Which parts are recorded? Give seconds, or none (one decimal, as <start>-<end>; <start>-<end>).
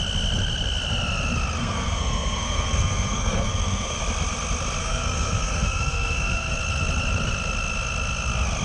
0.0-1.6; 4.0-4.8; 6.5-8.6